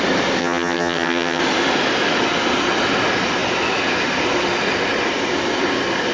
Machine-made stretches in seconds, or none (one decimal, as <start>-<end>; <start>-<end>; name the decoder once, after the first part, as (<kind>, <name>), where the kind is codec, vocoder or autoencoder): 0.4-1.4 (vocoder, HiFi-GAN)